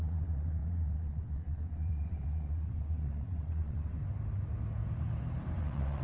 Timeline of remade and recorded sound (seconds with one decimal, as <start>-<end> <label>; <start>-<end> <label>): 0.0-4.0 remade; 4.0-5.6 recorded; 5.6-6.0 remade